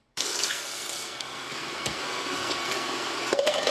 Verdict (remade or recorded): remade